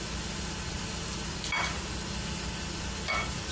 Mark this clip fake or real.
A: real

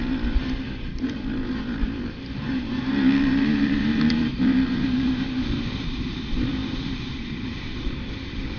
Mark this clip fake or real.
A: fake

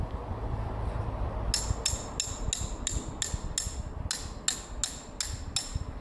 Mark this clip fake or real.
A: real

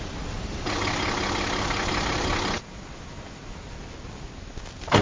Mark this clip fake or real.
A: real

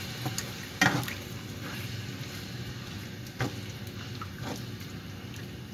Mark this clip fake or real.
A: real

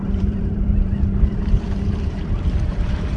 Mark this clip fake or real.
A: fake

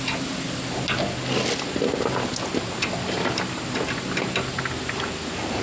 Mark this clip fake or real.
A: real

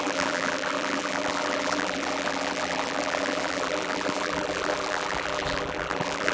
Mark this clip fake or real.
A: fake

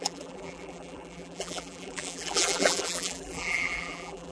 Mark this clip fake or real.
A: fake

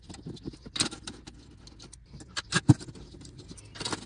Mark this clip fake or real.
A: real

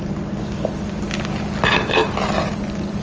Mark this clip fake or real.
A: real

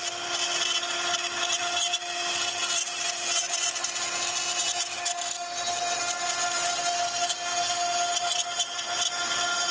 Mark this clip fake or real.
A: real